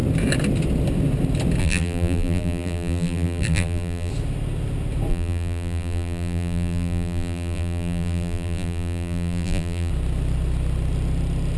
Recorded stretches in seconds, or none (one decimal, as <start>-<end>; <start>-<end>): 0.0-1.6; 4.1-5.1; 9.9-11.6